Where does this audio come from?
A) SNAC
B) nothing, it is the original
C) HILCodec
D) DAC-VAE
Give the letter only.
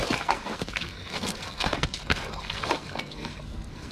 A